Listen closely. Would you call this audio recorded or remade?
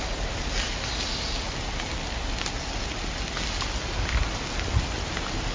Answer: recorded